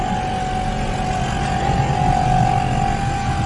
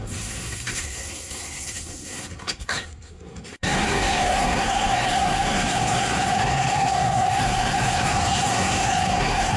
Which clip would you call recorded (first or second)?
first